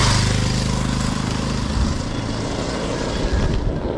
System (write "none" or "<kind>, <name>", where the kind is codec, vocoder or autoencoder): none